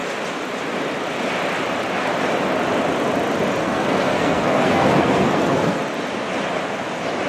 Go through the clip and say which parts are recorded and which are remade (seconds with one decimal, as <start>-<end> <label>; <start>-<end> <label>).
0.0-3.6 recorded; 3.6-5.8 remade; 5.8-7.3 recorded